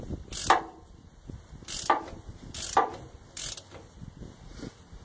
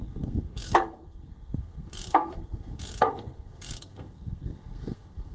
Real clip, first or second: first